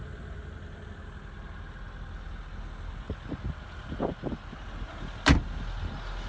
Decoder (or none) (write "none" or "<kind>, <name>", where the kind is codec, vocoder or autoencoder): none